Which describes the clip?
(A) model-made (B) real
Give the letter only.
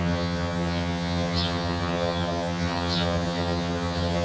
A